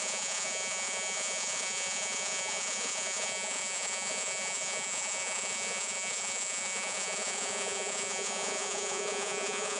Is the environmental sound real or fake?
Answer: fake